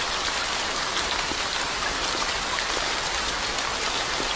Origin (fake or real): real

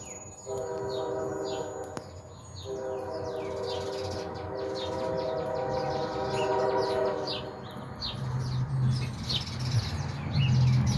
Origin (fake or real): real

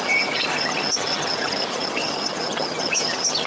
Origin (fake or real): fake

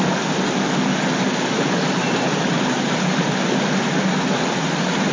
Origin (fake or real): real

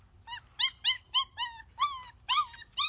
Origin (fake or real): real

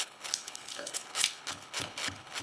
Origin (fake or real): fake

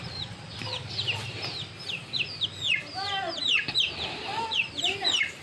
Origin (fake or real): real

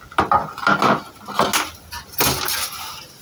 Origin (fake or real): real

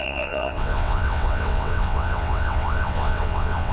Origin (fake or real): fake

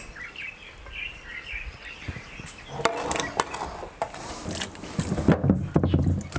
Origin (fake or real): real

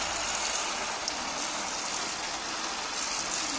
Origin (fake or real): real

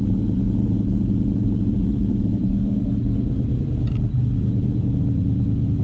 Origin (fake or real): fake